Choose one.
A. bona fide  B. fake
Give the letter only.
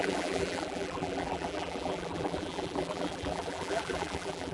B